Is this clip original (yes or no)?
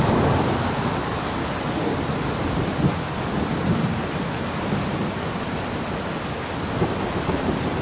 yes